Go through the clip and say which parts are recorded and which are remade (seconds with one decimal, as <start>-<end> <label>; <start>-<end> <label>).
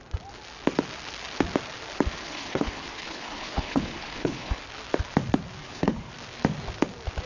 0.0-2.2 recorded; 2.2-4.6 remade; 4.6-5.6 recorded; 5.6-6.1 remade; 6.1-7.3 recorded